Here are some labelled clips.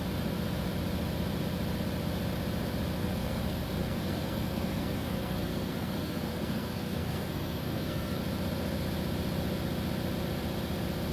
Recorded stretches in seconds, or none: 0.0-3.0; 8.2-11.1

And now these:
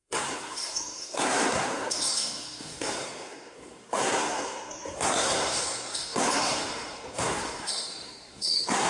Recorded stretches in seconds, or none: none

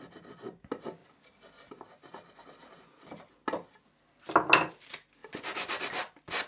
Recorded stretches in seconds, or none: 0.0-6.5

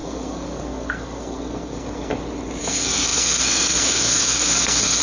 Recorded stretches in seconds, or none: 2.1-2.6

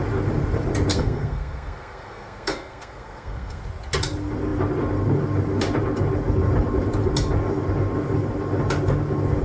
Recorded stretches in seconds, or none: 0.0-0.9; 3.6-9.4